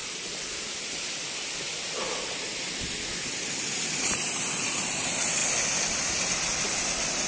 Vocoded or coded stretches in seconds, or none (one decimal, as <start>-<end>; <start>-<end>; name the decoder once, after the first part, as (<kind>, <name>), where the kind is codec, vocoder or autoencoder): none

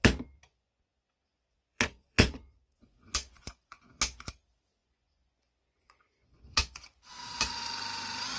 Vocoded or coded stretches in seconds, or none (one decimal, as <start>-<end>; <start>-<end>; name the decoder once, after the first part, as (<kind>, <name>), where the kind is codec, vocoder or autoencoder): 0.5-4.0 (vocoder, Vocos); 4.8-7.1

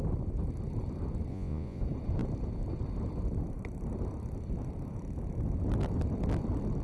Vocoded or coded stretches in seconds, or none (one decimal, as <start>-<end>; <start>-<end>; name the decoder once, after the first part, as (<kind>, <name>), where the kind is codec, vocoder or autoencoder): 1.3-1.8 (vocoder, Vocos)

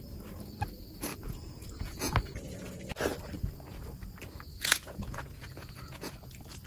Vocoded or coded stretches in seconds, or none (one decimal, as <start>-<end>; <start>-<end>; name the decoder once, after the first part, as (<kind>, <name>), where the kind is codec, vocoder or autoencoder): 1.1-2.2 (vocoder, Vocos); 4.5-6.3

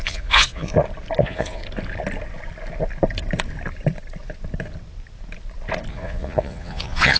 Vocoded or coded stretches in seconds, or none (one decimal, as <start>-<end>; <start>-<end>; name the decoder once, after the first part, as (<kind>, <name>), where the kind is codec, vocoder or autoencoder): 0.0-0.7 (vocoder, Vocos); 1.2-1.6; 5.9-7.2